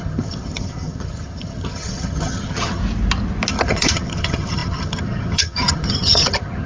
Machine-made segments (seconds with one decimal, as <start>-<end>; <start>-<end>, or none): 0.0-2.8; 3.5-6.7